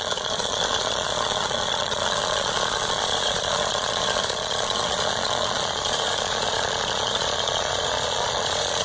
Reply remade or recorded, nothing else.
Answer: remade